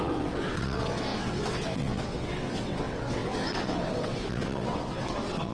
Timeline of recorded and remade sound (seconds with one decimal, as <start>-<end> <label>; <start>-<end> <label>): 0.0-5.5 remade